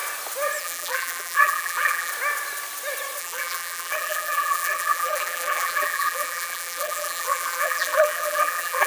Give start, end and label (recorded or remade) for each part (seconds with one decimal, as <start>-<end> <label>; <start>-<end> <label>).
0.0-0.6 recorded; 0.6-2.1 remade; 2.1-3.2 recorded; 3.2-8.9 remade